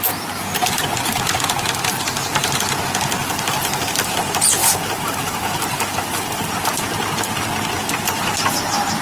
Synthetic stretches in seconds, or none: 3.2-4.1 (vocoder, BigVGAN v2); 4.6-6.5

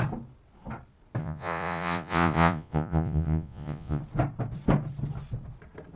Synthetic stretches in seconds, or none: 1.2-4.0 (vocoder, Vocos)

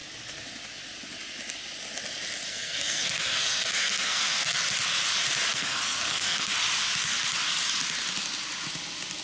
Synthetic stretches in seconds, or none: 2.5-4.6 (codec, SNAC); 5.5-6.5